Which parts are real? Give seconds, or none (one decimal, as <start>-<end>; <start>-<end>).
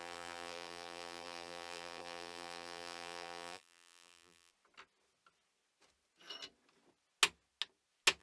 4.5-8.2